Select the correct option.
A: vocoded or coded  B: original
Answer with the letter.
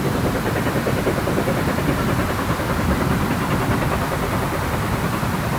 B